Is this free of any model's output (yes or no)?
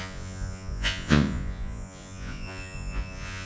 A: no